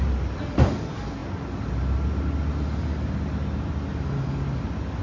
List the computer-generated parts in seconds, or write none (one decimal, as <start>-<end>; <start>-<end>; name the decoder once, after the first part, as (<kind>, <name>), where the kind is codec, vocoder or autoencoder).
none